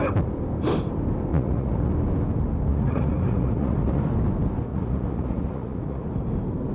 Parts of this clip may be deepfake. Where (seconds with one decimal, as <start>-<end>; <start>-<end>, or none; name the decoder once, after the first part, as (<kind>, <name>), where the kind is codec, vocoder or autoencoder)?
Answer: 1.3-1.9 (vocoder, Vocos); 2.7-4.0; 4.7-6.0